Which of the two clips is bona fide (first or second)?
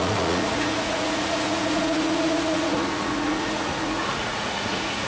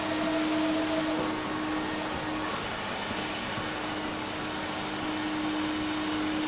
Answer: second